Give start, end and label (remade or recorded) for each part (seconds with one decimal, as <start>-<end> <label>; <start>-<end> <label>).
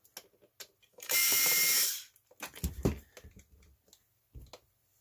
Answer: 0.0-0.9 recorded; 0.9-1.9 remade; 1.9-5.0 recorded